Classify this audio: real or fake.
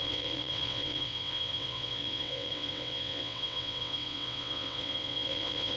fake